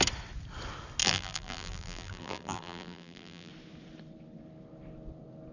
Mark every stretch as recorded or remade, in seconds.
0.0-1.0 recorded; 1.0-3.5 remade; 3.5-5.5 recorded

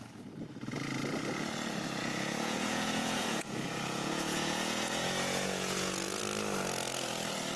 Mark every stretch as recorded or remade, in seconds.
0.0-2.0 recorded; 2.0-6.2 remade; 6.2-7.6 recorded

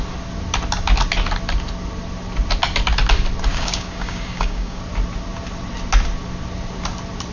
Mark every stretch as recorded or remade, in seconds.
0.0-3.5 recorded; 3.5-4.8 remade; 4.8-7.3 recorded

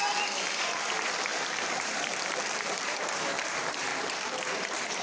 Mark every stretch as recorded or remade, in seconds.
0.0-1.3 recorded; 1.3-3.3 remade; 3.3-3.9 recorded; 3.9-4.4 remade; 4.4-5.0 recorded

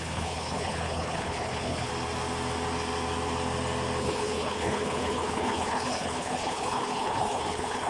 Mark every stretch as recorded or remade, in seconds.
0.0-1.9 remade; 1.9-4.0 recorded; 4.0-7.9 remade

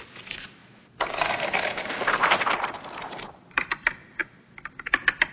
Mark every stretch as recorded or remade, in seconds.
0.0-0.6 recorded; 0.6-3.7 remade; 3.7-5.3 recorded

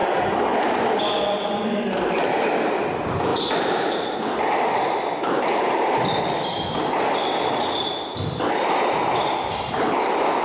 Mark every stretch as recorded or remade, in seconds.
0.0-0.7 recorded; 0.7-10.4 remade

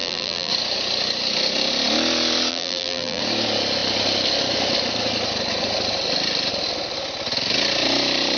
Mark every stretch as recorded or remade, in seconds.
0.0-0.5 remade; 0.5-2.5 recorded; 2.5-3.2 remade; 3.2-8.4 recorded